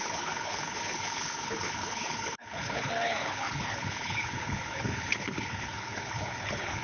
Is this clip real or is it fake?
fake